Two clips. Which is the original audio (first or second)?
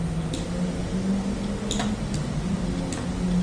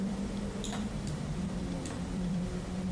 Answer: first